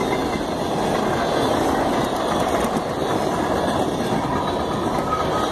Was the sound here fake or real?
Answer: real